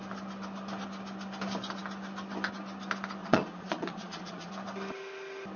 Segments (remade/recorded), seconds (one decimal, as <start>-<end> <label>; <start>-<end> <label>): 0.0-3.2 recorded; 3.2-4.5 remade; 4.5-5.6 recorded